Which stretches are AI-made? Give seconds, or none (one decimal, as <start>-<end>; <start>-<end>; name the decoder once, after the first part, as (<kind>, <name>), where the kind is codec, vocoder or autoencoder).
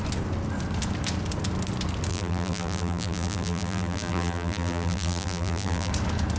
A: 2.1-5.9 (vocoder, BigVGAN v2)